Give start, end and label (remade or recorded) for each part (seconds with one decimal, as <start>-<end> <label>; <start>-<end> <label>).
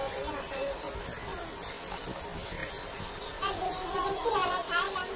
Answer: 0.0-5.2 recorded